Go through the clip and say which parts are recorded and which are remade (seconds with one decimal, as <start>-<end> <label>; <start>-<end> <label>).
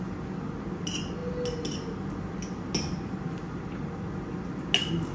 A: 0.0-5.1 recorded